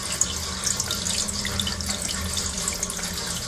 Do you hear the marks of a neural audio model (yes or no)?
no